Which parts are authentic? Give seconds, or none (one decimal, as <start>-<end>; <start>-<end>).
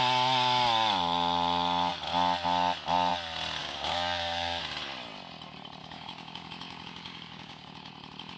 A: 0.0-3.6; 4.6-5.8; 7.9-8.4